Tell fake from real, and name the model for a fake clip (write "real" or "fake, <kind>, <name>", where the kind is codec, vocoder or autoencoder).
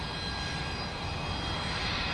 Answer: real